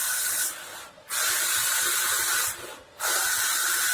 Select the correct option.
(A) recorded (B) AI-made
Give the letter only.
A